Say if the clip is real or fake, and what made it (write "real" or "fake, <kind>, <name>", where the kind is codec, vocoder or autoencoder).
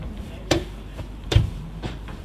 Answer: fake, vocoder, BigVGAN v2